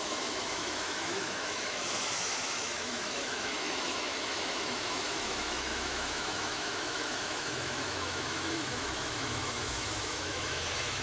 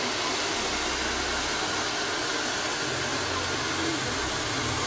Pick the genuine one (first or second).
second